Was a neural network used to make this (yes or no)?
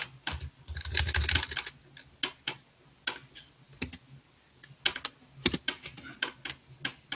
no